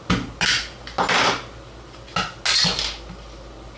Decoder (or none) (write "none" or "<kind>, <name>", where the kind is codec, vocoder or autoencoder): none